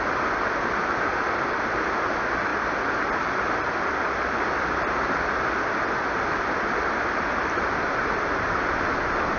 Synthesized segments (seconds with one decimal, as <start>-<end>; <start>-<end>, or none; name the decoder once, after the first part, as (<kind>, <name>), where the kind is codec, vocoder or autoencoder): none